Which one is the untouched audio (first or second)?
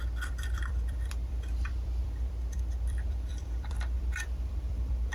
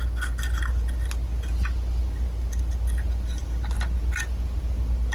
second